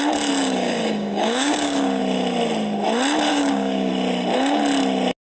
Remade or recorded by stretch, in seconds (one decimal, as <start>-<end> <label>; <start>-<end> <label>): 0.0-0.4 recorded; 0.4-2.0 remade; 2.0-3.3 recorded; 3.3-3.9 remade; 3.9-5.4 recorded